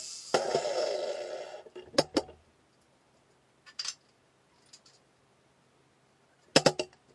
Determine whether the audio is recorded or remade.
recorded